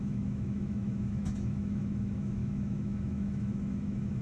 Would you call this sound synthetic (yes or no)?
yes